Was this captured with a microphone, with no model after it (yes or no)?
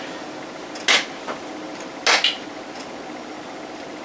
yes